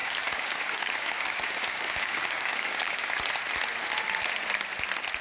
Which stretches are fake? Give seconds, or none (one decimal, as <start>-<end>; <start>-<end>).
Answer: 0.0-3.1